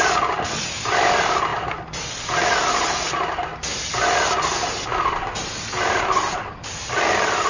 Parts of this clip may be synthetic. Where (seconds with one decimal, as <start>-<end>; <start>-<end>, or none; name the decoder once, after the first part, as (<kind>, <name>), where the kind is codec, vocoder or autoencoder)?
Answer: none